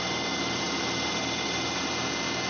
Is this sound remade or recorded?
recorded